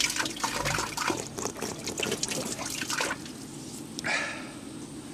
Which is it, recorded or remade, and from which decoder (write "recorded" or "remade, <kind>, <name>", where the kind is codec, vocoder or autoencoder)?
remade, vocoder, BigVGAN v2